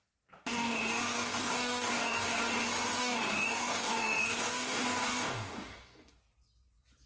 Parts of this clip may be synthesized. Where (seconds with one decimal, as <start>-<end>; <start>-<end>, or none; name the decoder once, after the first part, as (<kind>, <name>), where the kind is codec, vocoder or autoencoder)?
0.5-2.4 (codec, DAC); 3.0-6.2